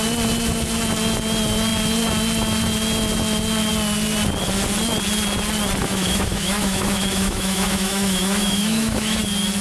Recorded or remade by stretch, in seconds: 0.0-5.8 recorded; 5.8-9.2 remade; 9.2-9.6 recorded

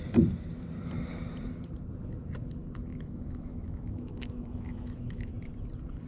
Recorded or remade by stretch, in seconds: 0.0-2.9 recorded; 2.9-5.3 remade; 5.3-6.1 recorded

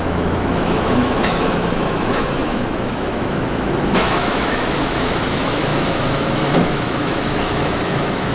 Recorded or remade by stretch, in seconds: 0.0-8.3 remade

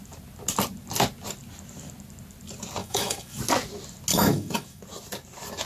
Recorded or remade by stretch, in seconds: 0.0-2.8 recorded; 2.8-3.4 remade; 3.4-4.1 recorded; 4.1-4.8 remade; 4.8-5.7 recorded